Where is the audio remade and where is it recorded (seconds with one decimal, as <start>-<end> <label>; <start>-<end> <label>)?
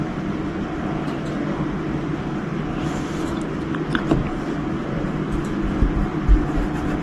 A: 0.0-7.0 recorded